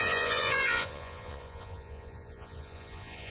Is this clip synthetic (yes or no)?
yes